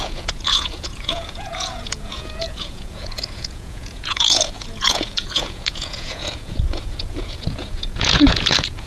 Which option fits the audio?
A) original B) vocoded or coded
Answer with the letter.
B